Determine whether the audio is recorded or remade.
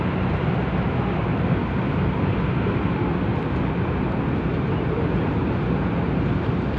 recorded